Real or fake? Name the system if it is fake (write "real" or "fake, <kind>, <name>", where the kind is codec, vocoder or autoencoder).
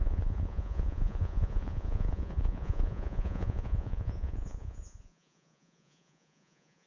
fake, vocoder, Vocos